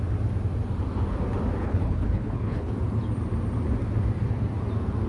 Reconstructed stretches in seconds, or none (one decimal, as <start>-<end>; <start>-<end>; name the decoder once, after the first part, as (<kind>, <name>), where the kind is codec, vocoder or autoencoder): 1.6-2.7 (codec, HILCodec)